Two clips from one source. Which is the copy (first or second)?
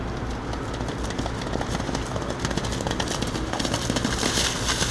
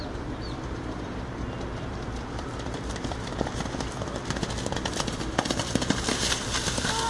second